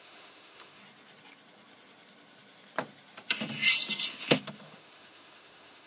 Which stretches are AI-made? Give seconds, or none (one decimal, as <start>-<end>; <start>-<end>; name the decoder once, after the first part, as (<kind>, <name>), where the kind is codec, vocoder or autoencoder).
0.0-0.8 (autoencoder, DAC-VAE); 4.1-5.9

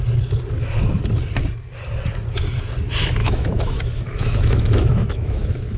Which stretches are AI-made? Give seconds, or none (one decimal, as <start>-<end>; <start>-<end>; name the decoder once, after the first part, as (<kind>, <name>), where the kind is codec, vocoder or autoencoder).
3.2-5.8 (autoencoder, DAC-VAE)

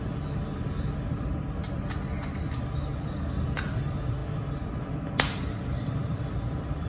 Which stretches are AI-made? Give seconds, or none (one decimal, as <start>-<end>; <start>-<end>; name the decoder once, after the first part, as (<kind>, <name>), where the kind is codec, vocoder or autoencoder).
4.2-6.9 (vocoder, BigVGAN v2)